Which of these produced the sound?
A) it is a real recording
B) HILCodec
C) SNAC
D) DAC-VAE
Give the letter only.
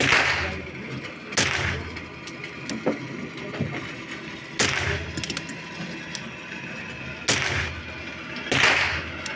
A